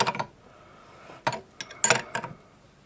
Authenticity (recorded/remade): recorded